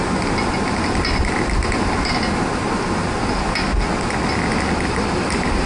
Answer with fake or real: real